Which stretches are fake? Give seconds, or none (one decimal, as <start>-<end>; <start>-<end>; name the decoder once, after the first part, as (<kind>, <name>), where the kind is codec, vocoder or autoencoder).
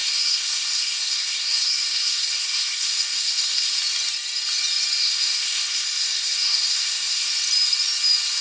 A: 0.0-3.7 (codec, SNAC); 5.0-7.3